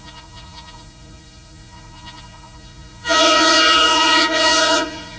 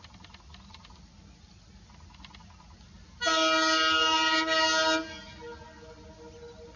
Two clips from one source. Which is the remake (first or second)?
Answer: first